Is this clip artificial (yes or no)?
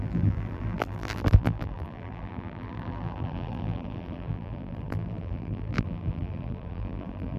yes